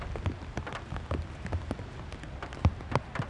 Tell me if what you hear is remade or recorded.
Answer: recorded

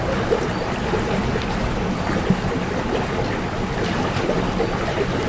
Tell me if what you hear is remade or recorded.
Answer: recorded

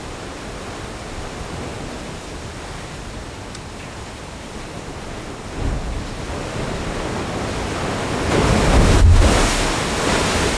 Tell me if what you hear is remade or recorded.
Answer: recorded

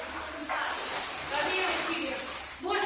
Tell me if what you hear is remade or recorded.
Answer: recorded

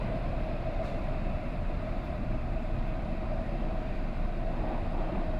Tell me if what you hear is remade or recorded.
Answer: remade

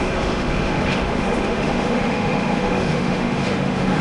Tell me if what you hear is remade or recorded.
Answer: remade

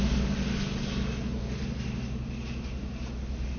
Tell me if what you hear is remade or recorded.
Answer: recorded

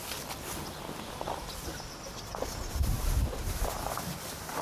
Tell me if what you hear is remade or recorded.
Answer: recorded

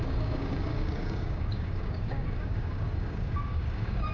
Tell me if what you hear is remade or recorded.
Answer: remade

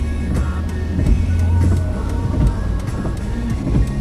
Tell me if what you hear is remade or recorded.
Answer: recorded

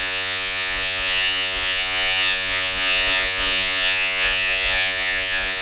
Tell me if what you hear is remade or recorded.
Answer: remade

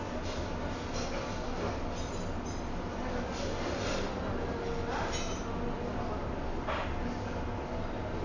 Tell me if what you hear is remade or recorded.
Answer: recorded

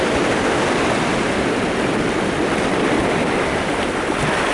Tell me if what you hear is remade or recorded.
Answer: recorded